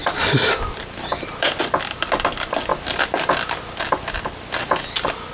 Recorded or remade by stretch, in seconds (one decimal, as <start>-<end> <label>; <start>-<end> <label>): 0.0-5.3 recorded